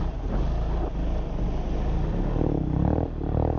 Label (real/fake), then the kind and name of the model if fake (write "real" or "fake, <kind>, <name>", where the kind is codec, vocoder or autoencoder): real